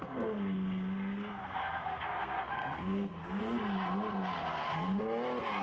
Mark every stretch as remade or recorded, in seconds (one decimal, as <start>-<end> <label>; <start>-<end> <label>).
0.0-3.4 remade; 3.4-4.4 recorded; 4.4-5.0 remade; 5.0-5.6 recorded

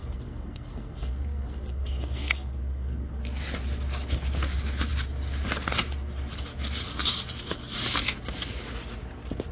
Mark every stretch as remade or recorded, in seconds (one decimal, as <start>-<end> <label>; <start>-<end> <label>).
0.0-3.2 remade; 3.2-9.5 recorded